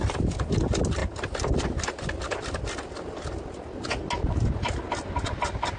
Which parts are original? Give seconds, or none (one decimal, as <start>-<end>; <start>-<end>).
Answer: 0.0-5.8